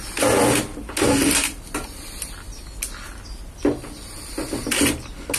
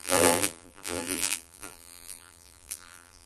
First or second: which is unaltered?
first